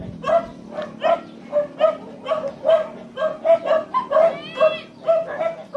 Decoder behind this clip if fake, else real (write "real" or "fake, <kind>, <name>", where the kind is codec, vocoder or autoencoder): real